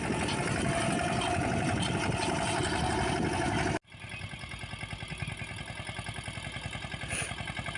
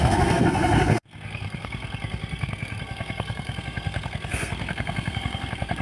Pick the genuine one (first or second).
first